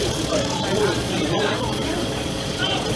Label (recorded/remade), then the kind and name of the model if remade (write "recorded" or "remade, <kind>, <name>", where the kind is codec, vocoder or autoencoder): remade, vocoder, Vocos